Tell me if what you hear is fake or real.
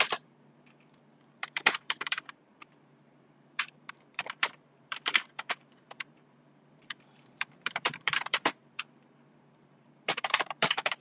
fake